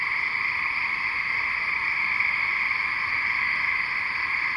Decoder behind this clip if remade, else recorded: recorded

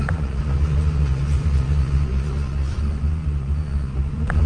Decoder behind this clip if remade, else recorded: remade, vocoder, Vocos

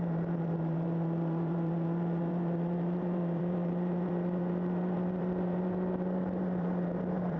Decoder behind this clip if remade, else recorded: remade, vocoder, BigVGAN v2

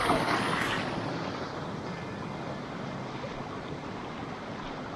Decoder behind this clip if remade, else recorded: recorded